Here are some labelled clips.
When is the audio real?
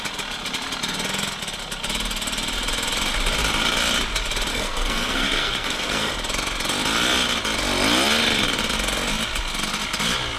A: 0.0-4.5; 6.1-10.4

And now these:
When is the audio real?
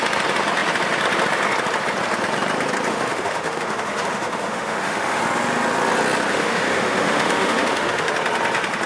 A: 0.0-2.9; 5.2-6.3; 8.1-8.9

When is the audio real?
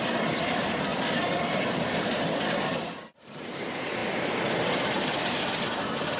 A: none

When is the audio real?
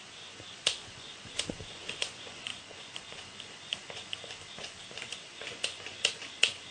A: none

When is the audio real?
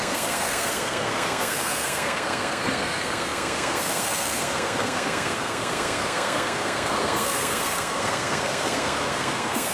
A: none